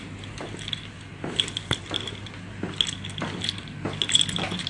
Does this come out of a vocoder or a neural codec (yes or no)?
no